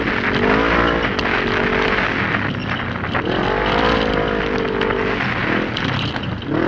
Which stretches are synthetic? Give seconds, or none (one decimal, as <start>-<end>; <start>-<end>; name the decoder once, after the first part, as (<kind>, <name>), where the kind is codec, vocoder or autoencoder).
none